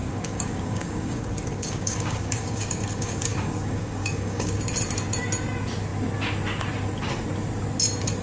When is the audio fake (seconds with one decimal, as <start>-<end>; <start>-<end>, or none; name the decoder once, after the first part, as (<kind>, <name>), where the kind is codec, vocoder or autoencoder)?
0.0-4.6 (codec, DAC)